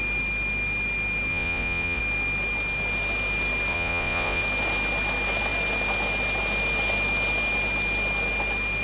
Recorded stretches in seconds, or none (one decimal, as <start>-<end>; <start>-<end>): 0.0-1.3; 2.0-3.7; 4.4-8.8